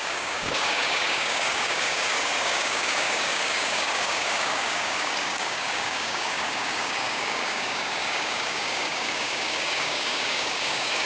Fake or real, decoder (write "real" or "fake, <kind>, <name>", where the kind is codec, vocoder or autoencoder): fake, codec, DAC